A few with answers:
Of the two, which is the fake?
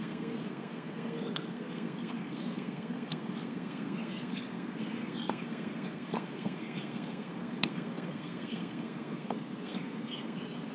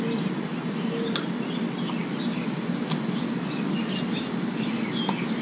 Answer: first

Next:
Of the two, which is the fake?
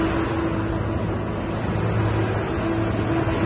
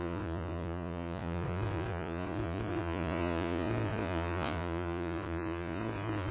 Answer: second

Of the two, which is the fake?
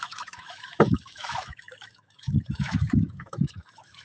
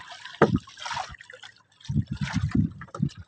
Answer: first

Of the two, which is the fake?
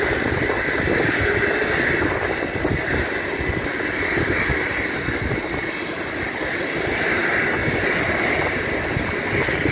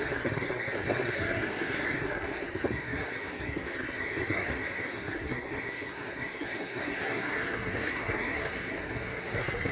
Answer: second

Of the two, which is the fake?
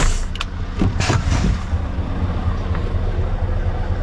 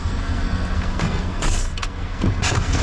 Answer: second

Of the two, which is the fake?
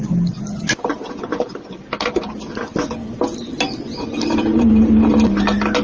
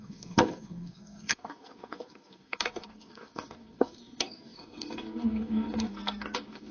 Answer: second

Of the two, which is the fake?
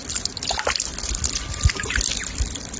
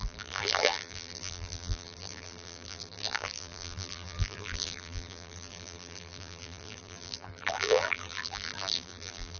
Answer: second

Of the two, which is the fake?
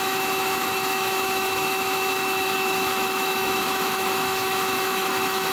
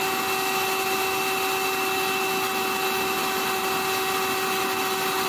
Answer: first